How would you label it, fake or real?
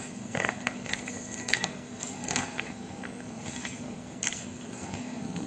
fake